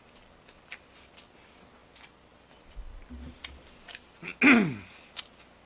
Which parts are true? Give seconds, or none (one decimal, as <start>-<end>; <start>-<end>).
0.0-5.7